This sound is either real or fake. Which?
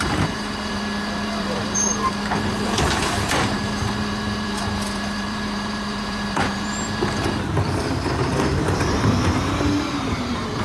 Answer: fake